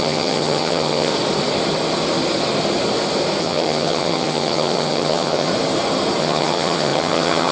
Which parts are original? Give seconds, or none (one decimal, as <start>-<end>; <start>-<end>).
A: 1.1-3.4; 5.5-6.2